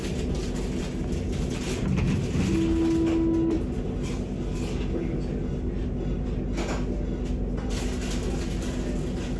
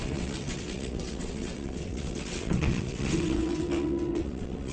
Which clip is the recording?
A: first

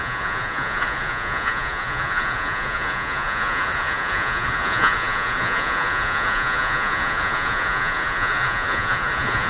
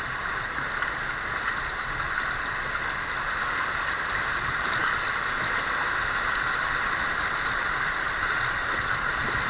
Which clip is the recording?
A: second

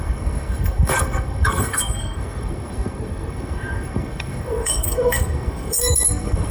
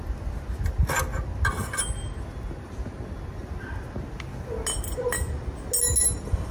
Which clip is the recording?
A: second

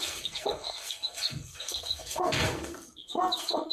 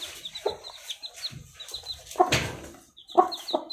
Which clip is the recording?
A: second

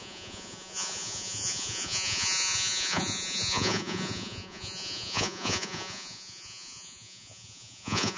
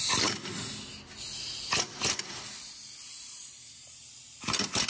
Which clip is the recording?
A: second